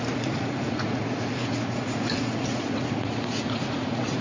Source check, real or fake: fake